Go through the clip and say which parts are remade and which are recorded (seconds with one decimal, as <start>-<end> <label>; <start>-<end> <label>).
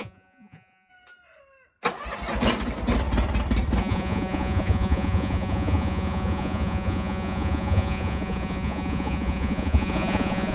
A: 0.0-0.9 remade; 0.9-3.8 recorded; 3.8-10.5 remade